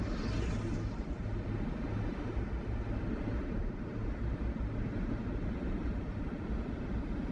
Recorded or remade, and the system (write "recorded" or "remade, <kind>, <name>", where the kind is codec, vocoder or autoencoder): recorded